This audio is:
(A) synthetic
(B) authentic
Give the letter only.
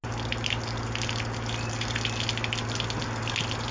B